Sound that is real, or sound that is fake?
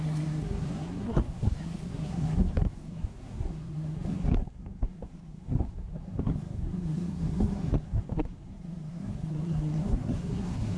fake